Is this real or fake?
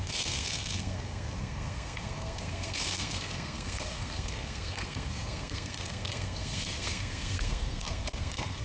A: fake